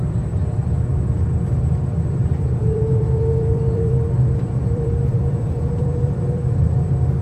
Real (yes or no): no